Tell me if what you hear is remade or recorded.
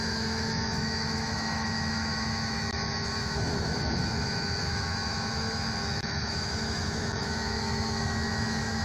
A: remade